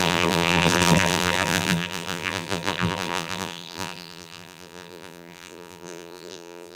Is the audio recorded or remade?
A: remade